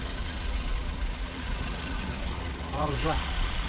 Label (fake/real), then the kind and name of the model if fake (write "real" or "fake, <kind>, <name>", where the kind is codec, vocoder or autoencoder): fake, vocoder, Vocos